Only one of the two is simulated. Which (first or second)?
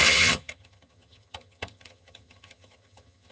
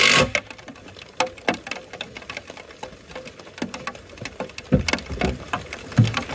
first